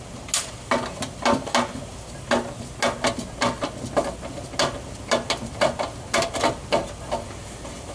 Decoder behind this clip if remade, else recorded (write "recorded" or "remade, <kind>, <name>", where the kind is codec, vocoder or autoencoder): recorded